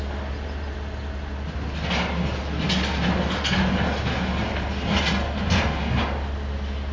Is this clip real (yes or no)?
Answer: yes